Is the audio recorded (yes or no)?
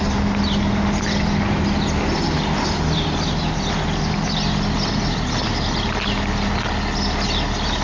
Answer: yes